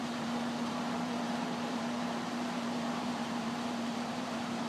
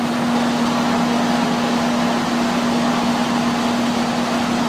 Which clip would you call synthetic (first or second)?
first